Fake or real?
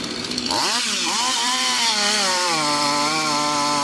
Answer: fake